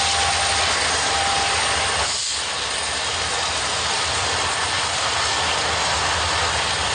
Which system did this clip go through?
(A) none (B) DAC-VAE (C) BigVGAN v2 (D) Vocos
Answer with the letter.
A